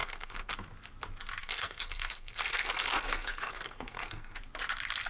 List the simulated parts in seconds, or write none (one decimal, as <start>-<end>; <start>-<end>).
0.0-0.5; 1.4-4.4